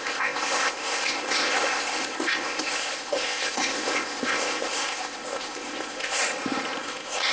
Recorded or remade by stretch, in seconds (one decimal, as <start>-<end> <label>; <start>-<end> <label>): 0.0-6.2 remade; 6.2-6.8 recorded; 6.8-7.3 remade